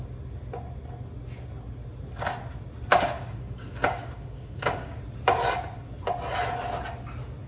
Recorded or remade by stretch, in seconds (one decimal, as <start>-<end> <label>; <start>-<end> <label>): 0.0-2.9 recorded; 2.9-5.0 remade; 5.0-7.5 recorded